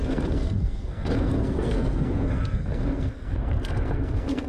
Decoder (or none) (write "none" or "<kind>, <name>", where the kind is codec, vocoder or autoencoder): codec, SNAC